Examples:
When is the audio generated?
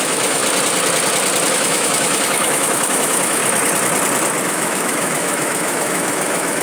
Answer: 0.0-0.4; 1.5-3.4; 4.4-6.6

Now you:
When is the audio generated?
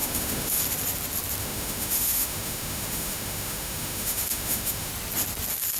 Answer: 0.0-0.6; 1.4-4.9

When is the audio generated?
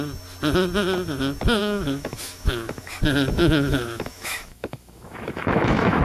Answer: 1.6-2.9; 3.4-6.0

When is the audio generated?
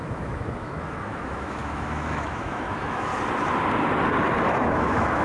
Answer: 0.0-3.1; 4.6-5.2